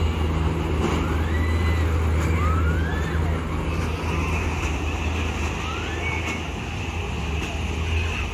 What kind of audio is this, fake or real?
real